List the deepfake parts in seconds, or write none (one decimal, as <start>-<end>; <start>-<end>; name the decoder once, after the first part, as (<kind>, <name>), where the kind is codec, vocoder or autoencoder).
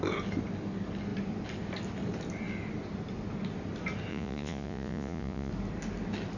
4.1-5.5 (vocoder, Vocos)